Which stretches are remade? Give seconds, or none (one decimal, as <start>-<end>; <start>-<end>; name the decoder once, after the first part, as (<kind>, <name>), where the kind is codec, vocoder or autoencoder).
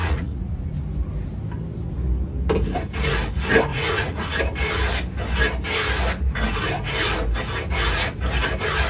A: 0.0-0.5 (vocoder, Vocos); 3.7-4.4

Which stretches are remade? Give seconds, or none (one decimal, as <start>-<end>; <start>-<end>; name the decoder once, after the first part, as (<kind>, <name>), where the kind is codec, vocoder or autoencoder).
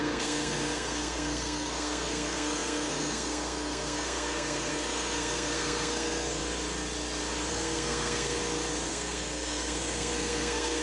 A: 0.0-6.4 (codec, SNAC); 7.5-8.4; 8.9-10.8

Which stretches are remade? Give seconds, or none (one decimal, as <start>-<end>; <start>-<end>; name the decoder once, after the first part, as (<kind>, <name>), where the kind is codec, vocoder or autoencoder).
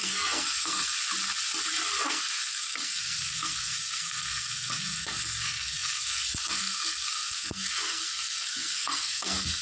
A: 0.0-1.0 (codec, SNAC); 2.0-9.6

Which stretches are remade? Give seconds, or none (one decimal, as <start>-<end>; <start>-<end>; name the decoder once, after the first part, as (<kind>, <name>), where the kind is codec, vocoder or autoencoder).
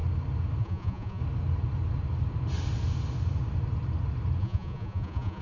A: 0.6-1.2 (vocoder, Vocos); 4.4-5.4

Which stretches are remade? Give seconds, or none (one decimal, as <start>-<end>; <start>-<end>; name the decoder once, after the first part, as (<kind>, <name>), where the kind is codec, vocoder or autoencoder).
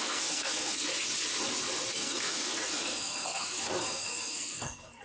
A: 0.0-0.9 (codec, SNAC); 1.9-5.0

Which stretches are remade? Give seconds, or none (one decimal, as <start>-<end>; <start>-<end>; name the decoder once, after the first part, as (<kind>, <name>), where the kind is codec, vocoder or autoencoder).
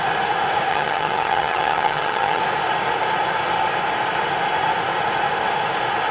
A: 0.7-2.4 (vocoder, HiFi-GAN)